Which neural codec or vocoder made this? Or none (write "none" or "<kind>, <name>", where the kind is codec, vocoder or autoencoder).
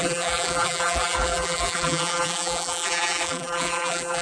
vocoder, BigVGAN v2